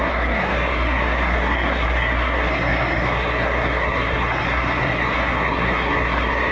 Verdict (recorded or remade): remade